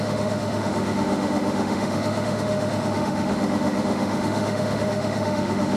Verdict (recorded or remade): remade